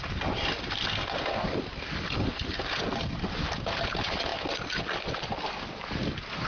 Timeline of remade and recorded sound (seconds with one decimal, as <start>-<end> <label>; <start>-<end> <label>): 0.0-6.5 recorded